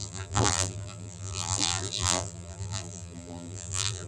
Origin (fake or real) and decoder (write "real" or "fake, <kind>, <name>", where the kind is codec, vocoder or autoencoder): fake, vocoder, BigVGAN v2